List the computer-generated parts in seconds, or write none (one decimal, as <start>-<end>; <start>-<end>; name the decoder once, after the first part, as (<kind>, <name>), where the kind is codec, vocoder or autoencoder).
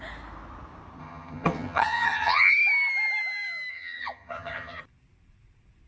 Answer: 1.0-2.5 (vocoder, HiFi-GAN); 3.7-4.8